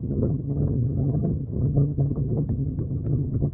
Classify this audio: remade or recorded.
remade